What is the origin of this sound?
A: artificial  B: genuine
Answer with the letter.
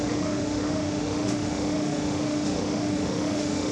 A